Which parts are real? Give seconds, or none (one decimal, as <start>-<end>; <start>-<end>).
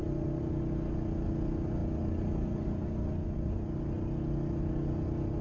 0.7-5.4